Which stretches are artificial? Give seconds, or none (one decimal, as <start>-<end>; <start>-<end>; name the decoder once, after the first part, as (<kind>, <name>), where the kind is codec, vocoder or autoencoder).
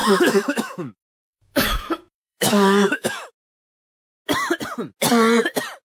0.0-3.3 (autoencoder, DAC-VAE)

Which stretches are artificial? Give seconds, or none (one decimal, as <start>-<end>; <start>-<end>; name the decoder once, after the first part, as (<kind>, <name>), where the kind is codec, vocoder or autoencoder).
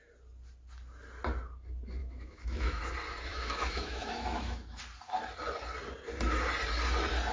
2.0-2.8 (autoencoder, DAC-VAE); 3.3-4.8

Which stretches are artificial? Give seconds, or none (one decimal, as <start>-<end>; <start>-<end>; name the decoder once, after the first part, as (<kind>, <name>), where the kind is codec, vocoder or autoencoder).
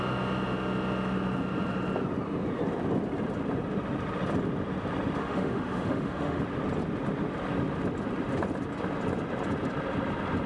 5.2-6.4 (autoencoder, DAC-VAE)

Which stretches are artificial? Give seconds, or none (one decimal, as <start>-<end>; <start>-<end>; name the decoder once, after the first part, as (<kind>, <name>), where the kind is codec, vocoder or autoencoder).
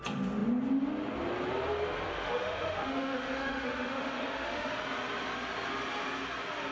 2.1-4.7 (autoencoder, DAC-VAE)